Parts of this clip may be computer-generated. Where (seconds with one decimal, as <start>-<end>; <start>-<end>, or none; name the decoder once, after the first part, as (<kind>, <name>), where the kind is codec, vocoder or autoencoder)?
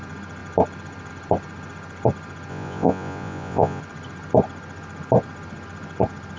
2.5-3.8 (vocoder, Vocos)